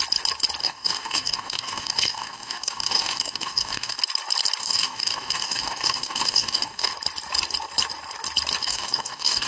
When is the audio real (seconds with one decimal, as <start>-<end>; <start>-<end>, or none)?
0.0-0.6; 4.0-4.6; 6.9-8.6